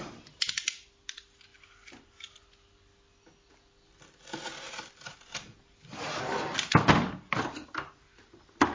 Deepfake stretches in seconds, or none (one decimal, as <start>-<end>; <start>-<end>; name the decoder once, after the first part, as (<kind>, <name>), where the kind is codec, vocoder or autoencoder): none